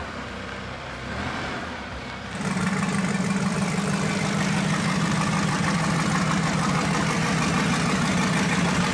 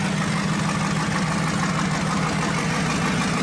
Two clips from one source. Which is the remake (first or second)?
first